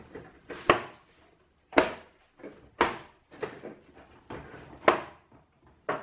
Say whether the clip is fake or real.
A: real